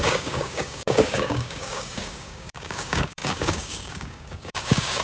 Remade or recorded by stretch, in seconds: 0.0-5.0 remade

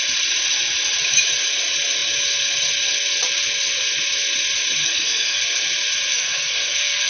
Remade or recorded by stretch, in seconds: 0.0-4.8 recorded; 4.8-5.4 remade; 5.4-6.1 recorded; 6.1-7.1 remade

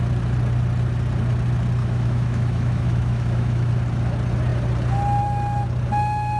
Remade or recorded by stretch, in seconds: 0.0-1.8 recorded; 1.8-3.7 remade; 3.7-6.4 recorded